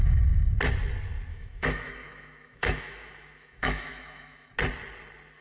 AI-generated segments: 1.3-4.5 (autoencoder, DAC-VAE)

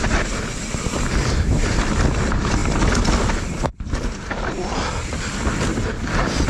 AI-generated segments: none